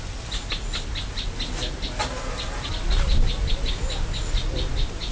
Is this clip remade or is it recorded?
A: recorded